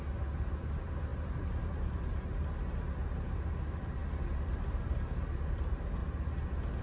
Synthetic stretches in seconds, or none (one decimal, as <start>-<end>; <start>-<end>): 0.0-6.0